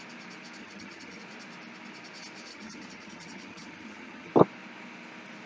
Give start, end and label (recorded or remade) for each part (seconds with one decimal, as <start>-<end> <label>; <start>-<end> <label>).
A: 0.0-0.6 recorded; 0.6-1.2 remade; 1.2-2.5 recorded; 2.5-4.3 remade; 4.3-5.5 recorded